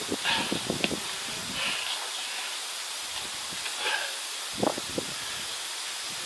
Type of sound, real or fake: real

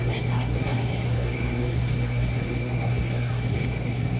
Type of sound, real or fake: fake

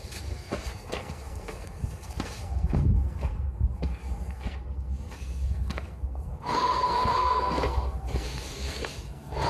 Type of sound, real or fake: fake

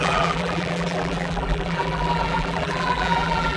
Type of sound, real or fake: fake